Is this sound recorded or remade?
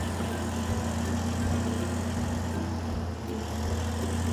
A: recorded